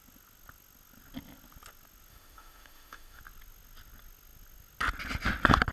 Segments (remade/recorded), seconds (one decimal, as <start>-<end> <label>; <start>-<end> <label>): 0.0-2.1 recorded; 2.1-3.2 remade; 3.2-5.7 recorded